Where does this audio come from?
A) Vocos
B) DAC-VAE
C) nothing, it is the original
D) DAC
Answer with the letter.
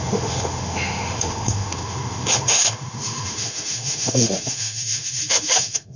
B